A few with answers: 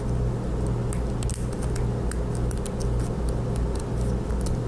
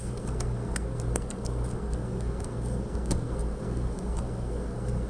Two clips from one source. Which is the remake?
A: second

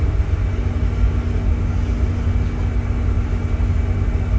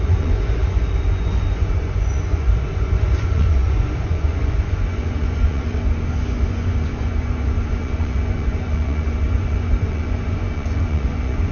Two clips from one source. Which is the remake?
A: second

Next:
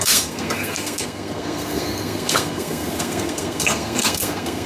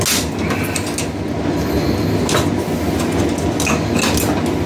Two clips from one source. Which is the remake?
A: first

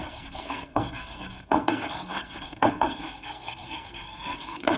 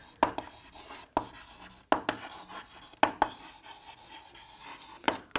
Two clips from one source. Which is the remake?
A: first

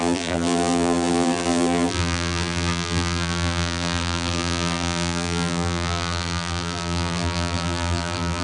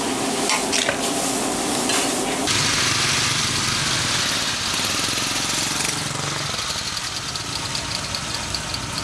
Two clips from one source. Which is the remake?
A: first